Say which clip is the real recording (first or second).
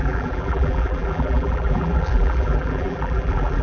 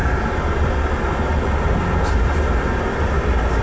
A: second